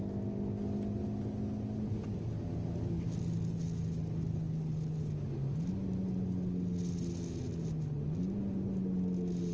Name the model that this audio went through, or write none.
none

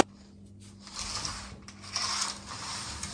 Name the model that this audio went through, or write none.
none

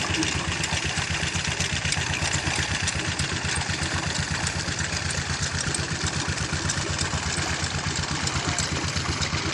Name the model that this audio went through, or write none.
none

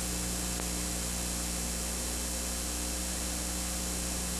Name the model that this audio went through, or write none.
none